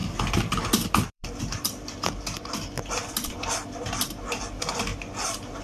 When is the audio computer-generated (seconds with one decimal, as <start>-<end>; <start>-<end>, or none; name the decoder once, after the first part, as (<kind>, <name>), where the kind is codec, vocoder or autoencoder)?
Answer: 0.0-1.7 (vocoder, BigVGAN v2)